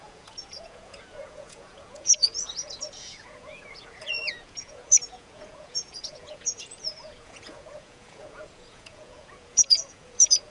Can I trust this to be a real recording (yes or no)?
no